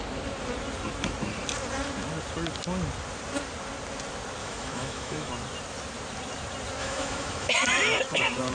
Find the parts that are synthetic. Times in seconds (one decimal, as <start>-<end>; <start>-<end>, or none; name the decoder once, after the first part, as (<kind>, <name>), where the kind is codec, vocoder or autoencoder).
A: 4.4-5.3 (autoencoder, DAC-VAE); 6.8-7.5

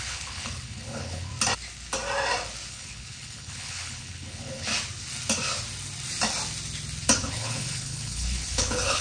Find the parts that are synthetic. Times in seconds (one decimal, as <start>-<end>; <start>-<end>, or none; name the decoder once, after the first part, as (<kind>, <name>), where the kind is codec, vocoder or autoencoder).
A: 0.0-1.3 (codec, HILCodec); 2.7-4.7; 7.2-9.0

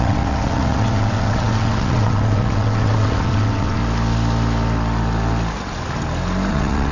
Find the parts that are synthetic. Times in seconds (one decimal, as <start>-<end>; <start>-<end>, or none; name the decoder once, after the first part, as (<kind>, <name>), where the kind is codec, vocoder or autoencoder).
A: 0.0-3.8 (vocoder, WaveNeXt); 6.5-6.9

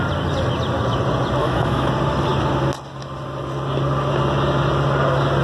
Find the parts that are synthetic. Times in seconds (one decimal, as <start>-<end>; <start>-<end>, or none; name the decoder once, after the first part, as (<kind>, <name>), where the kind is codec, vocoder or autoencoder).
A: 1.4-1.9 (autoencoder, DAC-VAE)

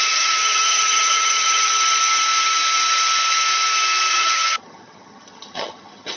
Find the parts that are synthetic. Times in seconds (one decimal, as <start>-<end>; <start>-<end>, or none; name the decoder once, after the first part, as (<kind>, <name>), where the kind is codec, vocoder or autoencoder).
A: 0.0-1.7 (vocoder, HiFi-GAN); 4.1-6.2

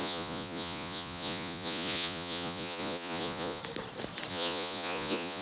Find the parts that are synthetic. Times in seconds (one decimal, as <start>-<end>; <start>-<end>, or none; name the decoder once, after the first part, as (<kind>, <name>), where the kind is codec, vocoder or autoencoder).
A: 0.0-3.6 (vocoder, Vocos); 4.3-5.4